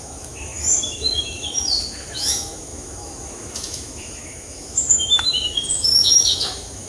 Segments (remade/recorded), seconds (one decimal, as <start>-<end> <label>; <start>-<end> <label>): 0.0-6.9 remade